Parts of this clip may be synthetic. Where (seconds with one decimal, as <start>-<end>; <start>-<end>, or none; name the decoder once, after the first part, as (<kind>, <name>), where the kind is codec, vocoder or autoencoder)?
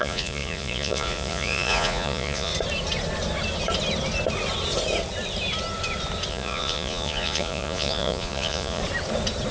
0.0-2.5 (vocoder, Vocos); 6.3-8.8